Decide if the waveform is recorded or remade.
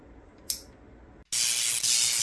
recorded